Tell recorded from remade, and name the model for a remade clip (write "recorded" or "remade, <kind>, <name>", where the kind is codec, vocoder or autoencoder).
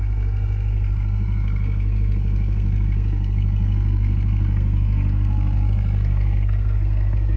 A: remade, codec, SNAC